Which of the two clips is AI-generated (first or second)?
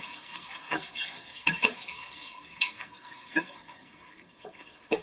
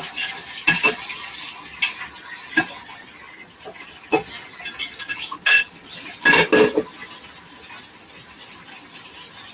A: first